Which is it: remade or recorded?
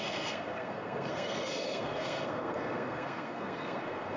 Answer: remade